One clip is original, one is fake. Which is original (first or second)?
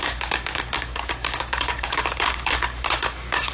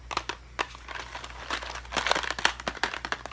second